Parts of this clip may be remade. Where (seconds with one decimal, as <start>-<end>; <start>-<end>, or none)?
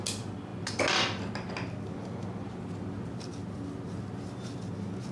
none